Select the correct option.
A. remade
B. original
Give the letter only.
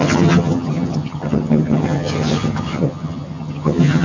A